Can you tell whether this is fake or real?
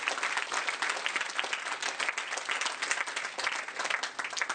real